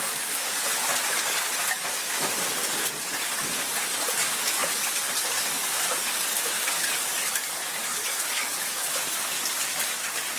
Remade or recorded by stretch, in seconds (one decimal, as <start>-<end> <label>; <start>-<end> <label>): 0.0-0.5 remade; 0.5-1.1 recorded; 1.1-10.4 remade